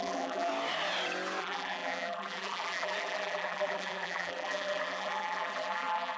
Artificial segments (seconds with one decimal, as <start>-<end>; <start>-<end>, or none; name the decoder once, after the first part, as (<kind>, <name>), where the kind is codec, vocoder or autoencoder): 0.0-0.5 (vocoder, BigVGAN v2); 1.4-6.2